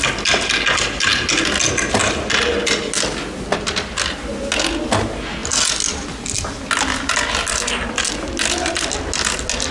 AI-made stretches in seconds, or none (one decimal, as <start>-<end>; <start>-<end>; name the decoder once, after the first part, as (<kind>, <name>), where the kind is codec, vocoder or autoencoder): none